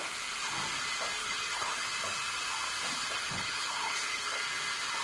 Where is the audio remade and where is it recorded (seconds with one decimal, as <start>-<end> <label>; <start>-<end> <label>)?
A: 0.0-1.2 recorded; 1.2-1.9 remade; 1.9-2.9 recorded; 2.9-4.4 remade; 4.4-5.0 recorded